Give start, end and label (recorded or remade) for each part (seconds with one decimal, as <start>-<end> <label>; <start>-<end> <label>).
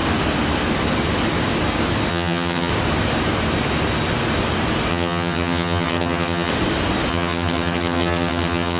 0.0-2.1 recorded; 2.1-2.7 remade; 2.7-4.9 recorded; 4.9-6.5 remade; 6.5-7.1 recorded; 7.1-8.8 remade